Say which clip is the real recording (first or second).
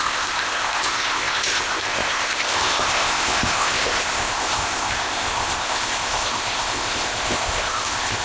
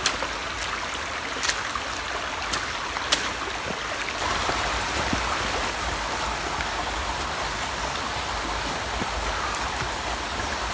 second